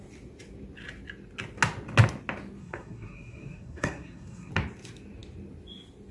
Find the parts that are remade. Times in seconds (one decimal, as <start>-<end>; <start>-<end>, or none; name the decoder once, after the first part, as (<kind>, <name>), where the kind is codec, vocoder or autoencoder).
2.6-4.5 (codec, SNAC)